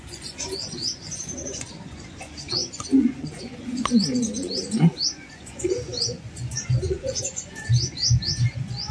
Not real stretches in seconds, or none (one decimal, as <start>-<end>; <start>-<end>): 0.0-8.9